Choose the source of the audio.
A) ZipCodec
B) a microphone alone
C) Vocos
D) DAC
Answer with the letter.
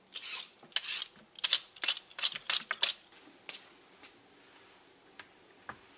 B